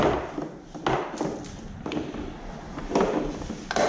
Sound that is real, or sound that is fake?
real